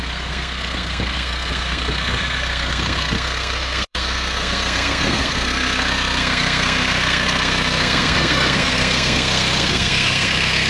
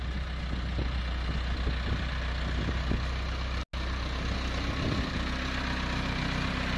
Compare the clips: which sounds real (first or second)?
second